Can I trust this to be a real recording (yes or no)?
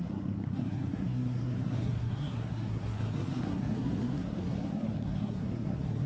no